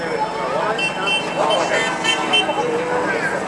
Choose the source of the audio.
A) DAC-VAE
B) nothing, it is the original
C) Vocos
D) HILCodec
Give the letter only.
B